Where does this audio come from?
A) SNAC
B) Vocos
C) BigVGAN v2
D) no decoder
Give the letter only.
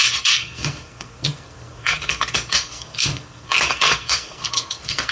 A